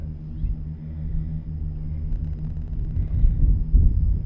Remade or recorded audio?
recorded